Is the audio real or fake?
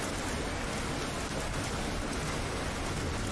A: real